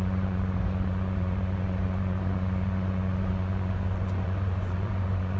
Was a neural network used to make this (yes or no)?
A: yes